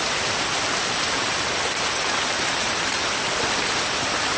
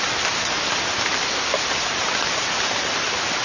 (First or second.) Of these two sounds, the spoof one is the first